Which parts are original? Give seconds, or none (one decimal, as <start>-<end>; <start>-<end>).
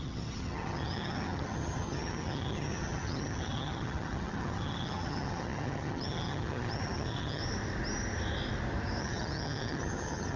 7.4-9.0